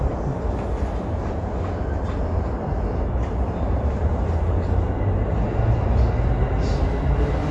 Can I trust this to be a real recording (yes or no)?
yes